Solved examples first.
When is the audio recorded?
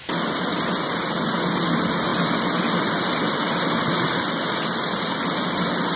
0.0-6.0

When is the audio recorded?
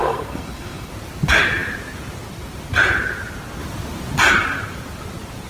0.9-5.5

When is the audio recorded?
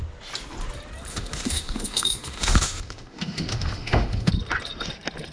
0.0-1.1; 4.3-5.3